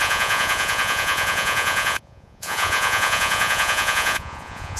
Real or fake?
fake